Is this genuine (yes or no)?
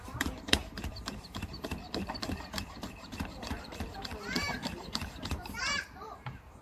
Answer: no